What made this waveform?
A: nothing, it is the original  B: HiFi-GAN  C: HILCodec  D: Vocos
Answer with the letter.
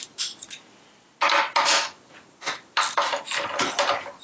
A